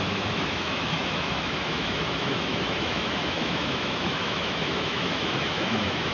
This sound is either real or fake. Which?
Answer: fake